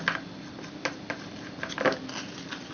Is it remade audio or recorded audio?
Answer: recorded